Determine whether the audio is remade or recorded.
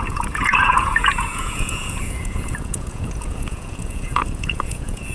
remade